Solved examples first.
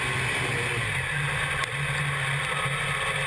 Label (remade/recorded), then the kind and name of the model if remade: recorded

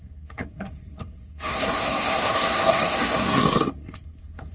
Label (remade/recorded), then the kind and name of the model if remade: remade, codec, SNAC